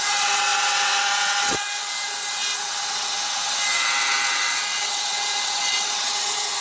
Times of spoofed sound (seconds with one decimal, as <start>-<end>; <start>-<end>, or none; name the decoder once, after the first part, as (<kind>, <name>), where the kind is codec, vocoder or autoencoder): 0.0-6.6 (vocoder, WaveNeXt)